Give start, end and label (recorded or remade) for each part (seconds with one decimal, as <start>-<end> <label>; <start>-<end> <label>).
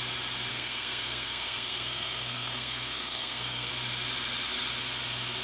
0.0-0.5 recorded; 0.5-3.7 remade; 3.7-5.4 recorded